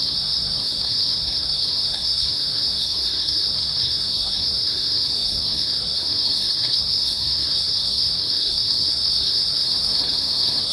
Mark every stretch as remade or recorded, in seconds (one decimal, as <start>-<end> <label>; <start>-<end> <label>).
0.0-10.7 remade